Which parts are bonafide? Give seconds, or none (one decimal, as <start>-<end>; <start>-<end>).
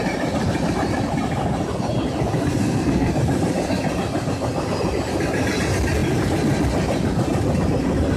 0.0-2.6; 3.2-8.2